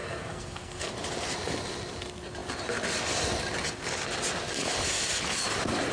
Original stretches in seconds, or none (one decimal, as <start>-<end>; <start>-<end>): 0.9-5.9